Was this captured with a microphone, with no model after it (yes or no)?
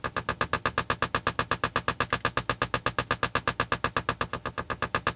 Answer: yes